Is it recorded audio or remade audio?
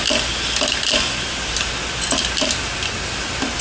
recorded